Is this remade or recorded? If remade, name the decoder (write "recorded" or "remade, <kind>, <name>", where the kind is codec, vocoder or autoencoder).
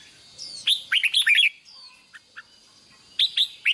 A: recorded